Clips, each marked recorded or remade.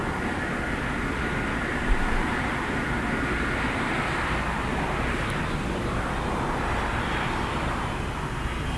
recorded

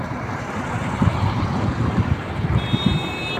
remade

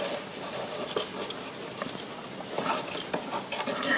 recorded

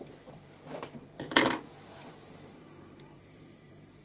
remade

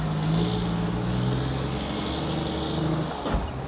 recorded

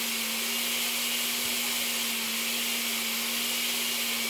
recorded